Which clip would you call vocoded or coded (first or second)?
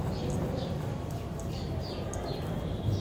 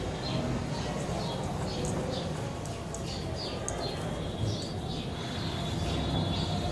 first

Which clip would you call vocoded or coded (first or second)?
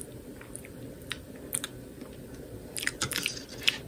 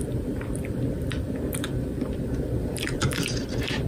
second